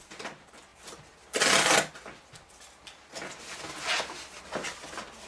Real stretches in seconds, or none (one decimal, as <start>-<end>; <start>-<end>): 0.0-5.3

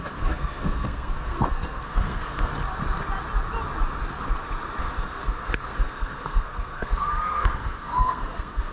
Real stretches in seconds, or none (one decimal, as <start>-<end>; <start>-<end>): 2.5-4.8

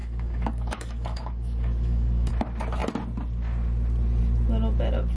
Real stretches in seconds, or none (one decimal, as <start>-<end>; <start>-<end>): 2.3-5.2

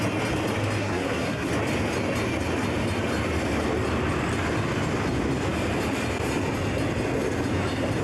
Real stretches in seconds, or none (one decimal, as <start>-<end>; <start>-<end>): 0.0-0.8; 1.5-8.0

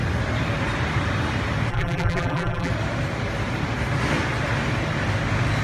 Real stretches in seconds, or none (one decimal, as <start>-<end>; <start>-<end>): 0.0-1.7; 2.7-5.6

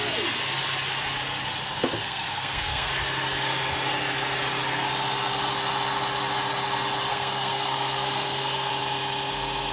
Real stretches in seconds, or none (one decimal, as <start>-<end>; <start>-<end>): 0.0-2.0; 2.9-7.1; 8.7-9.7

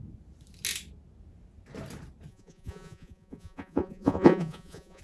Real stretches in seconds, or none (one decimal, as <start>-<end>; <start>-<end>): 0.0-2.3

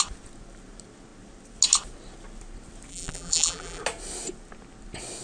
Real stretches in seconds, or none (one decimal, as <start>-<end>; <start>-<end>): 0.0-2.9; 3.8-5.2